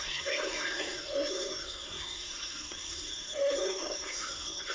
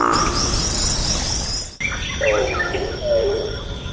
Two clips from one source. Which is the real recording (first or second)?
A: second